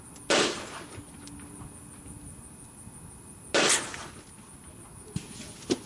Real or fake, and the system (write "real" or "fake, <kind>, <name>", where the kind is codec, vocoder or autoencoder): real